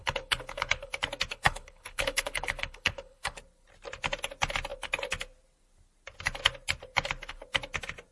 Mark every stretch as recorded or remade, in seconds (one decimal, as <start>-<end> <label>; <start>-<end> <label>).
0.0-0.9 remade; 0.9-1.3 recorded; 1.3-3.4 remade; 3.4-8.1 recorded

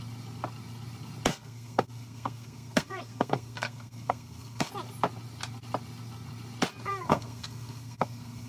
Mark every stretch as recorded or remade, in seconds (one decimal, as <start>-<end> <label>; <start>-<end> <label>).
0.0-1.3 recorded; 1.3-4.7 remade; 4.7-6.9 recorded; 6.9-8.5 remade

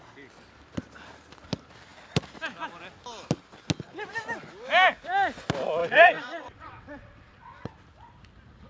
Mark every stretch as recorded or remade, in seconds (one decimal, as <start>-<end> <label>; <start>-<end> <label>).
0.0-5.8 recorded; 5.8-7.7 remade; 7.7-8.7 recorded